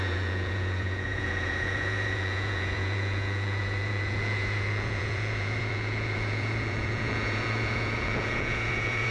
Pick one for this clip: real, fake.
fake